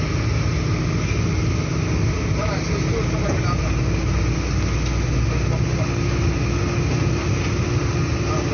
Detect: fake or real real